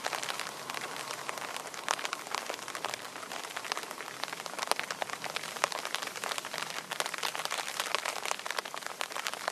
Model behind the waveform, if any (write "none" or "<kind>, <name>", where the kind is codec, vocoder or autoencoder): vocoder, BigVGAN v2